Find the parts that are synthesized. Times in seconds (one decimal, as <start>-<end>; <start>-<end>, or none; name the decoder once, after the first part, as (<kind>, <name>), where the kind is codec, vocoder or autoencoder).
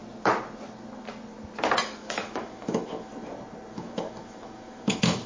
1.8-3.1 (autoencoder, DAC-VAE); 3.7-5.3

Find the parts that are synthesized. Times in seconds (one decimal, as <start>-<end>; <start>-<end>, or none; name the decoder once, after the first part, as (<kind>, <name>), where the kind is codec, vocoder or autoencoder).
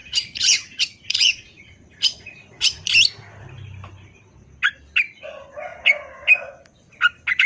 0.0-2.9 (vocoder, Vocos)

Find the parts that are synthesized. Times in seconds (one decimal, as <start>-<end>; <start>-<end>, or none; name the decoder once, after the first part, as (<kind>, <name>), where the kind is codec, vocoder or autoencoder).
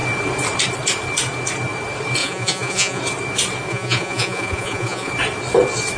2.2-3.0 (vocoder, Vocos); 3.7-5.1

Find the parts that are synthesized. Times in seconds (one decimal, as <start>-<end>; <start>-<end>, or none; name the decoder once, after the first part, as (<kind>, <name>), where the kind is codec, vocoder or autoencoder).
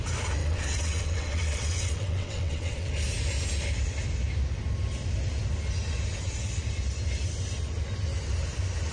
0.4-2.9 (vocoder, WaveNeXt)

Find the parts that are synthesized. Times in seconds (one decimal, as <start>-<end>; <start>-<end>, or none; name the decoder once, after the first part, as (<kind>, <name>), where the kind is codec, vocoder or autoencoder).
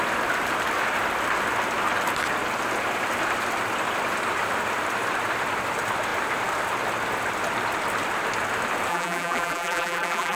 8.9-10.4 (vocoder, BigVGAN v2)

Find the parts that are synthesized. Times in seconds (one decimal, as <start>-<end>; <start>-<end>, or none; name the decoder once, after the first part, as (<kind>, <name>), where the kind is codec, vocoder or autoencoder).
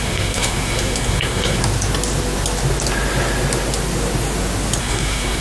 0.0-1.6 (codec, SNAC); 4.8-5.4